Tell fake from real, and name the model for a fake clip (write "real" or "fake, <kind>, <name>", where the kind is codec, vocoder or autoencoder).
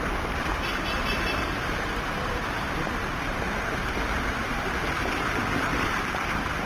fake, vocoder, BigVGAN v2